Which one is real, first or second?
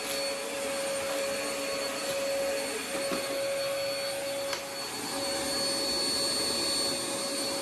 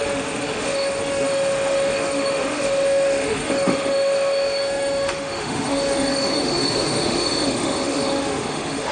first